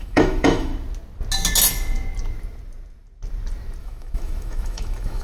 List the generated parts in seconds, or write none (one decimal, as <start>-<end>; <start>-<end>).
0.0-0.7; 3.8-5.2